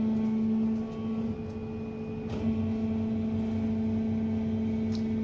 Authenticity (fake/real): real